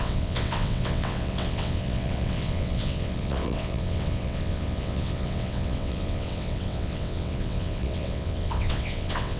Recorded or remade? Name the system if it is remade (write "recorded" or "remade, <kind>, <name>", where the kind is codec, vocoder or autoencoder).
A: remade, vocoder, WaveNeXt